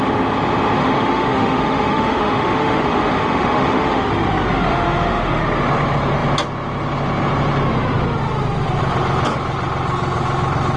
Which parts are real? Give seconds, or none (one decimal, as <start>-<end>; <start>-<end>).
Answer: 0.0-0.8; 4.1-4.7; 5.4-10.8